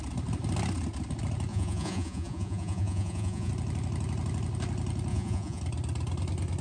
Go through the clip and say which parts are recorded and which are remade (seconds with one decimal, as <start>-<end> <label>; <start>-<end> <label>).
0.0-1.5 recorded; 1.5-3.5 remade; 3.5-5.1 recorded; 5.1-5.6 remade; 5.6-6.6 recorded